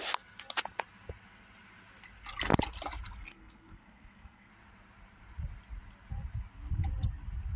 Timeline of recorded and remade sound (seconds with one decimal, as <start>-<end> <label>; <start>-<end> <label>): 0.0-3.3 recorded; 3.3-4.5 remade; 4.5-7.6 recorded